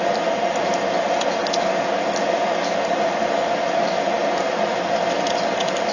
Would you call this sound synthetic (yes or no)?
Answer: no